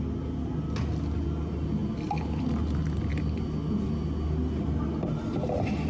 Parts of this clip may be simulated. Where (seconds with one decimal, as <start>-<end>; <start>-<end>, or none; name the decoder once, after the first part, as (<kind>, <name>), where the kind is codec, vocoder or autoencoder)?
none